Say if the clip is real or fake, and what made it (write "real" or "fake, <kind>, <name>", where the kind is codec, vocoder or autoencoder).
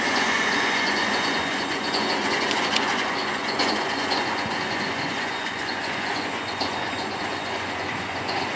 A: fake, vocoder, Vocos